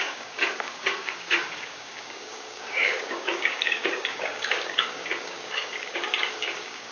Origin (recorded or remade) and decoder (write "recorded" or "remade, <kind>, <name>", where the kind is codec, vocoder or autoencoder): remade, codec, DAC